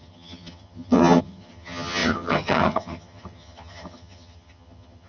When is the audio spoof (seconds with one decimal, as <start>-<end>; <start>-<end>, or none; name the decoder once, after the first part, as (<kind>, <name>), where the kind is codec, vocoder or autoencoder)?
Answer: 0.0-5.1 (vocoder, HiFi-GAN)